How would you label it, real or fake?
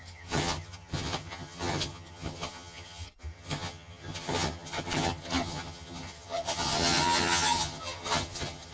fake